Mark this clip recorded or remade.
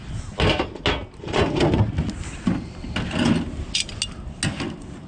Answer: recorded